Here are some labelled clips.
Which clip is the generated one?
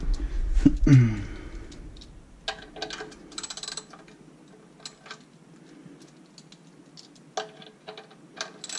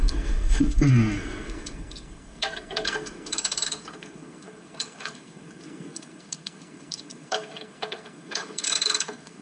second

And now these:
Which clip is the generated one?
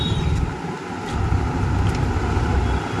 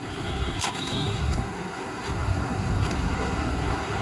second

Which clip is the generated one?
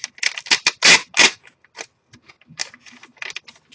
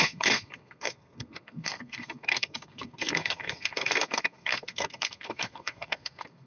second